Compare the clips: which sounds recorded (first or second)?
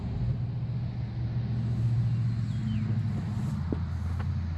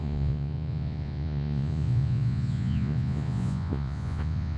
first